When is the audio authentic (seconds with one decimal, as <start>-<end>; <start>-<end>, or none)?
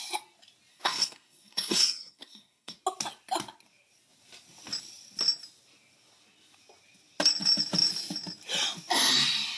0.0-0.7; 2.8-9.6